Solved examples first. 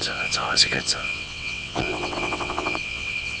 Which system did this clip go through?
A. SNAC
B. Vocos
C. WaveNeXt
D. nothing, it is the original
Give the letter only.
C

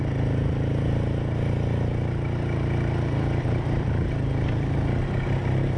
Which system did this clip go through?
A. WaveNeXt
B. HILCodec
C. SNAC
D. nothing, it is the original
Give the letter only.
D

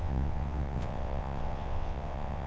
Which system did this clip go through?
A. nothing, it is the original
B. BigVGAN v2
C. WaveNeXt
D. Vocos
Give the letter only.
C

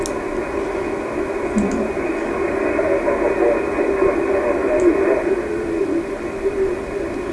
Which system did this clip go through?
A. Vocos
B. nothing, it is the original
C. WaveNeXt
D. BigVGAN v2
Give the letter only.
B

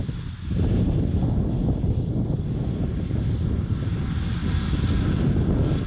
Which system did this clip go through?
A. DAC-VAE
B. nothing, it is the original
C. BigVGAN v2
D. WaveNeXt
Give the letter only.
B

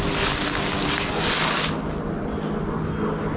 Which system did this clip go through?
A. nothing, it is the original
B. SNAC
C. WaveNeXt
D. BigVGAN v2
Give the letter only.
A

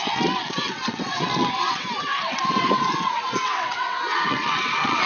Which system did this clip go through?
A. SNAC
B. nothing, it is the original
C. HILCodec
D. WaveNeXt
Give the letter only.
D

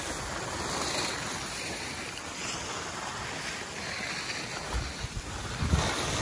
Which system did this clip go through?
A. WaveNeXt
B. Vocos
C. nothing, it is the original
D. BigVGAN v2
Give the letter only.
C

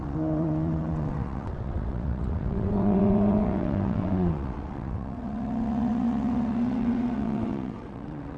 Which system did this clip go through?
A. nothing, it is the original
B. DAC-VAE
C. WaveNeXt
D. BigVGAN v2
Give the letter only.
C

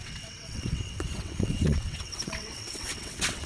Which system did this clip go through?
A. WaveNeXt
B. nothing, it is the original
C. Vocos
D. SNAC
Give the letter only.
A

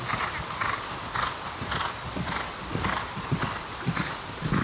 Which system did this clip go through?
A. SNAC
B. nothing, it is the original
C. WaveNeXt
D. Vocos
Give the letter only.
B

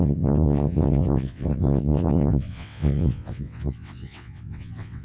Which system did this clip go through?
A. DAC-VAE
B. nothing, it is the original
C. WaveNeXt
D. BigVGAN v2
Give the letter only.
C